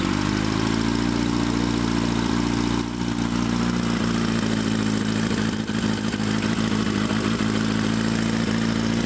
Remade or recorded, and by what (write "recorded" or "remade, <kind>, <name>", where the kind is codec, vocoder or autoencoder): recorded